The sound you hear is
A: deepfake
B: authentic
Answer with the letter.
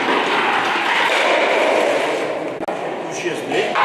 B